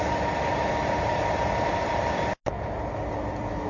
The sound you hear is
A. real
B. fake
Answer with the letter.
A